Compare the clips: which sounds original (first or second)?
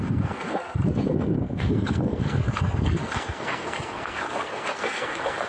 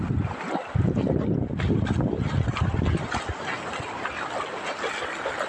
second